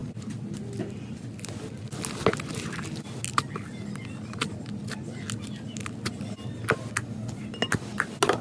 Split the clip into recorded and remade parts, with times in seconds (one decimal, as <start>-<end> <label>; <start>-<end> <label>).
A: 0.0-8.4 recorded